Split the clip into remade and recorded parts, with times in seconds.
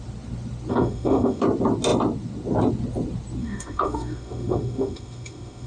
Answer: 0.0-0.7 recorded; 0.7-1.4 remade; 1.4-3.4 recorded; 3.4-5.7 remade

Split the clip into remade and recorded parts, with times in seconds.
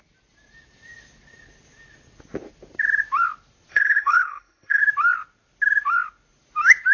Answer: 0.0-3.7 recorded; 3.7-4.8 remade; 4.8-6.9 recorded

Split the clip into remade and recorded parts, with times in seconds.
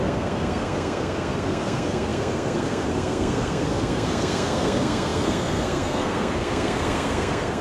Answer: 0.0-7.6 remade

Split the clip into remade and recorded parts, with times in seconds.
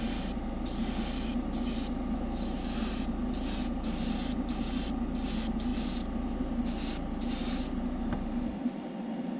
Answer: 0.0-9.4 recorded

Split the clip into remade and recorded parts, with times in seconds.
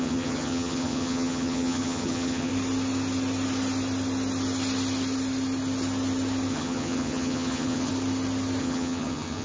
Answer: 0.0-2.5 remade; 2.5-6.5 recorded; 6.5-7.9 remade; 7.9-8.6 recorded; 8.6-9.4 remade